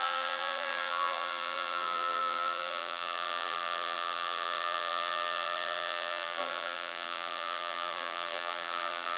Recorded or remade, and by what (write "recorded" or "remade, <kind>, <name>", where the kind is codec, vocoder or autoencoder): remade, vocoder, BigVGAN v2